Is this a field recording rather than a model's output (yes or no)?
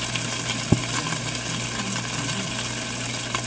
yes